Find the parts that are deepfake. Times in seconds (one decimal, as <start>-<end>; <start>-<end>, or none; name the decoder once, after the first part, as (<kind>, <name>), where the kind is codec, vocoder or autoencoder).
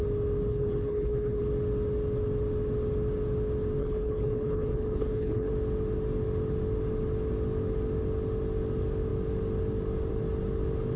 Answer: 0.5-1.4 (codec, HILCodec); 3.8-5.5